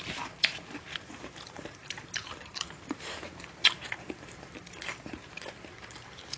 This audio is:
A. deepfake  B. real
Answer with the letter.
A